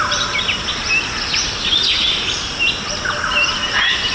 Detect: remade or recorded recorded